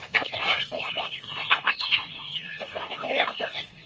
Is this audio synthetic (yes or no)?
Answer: yes